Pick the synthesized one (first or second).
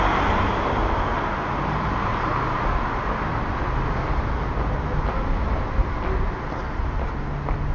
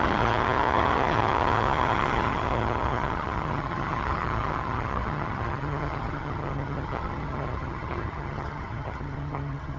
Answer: second